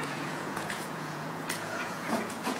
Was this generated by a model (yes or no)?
yes